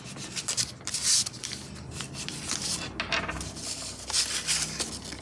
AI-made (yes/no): no